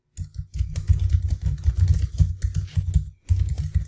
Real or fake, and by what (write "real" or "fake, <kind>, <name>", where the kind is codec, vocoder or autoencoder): real